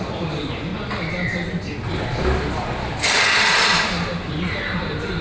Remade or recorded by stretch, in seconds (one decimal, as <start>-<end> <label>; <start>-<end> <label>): 0.0-0.7 remade; 0.7-3.8 recorded; 3.8-5.2 remade